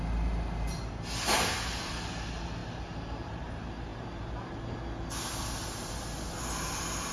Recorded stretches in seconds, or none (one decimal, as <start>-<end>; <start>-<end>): 0.0-7.1